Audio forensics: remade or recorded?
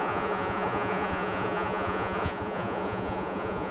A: remade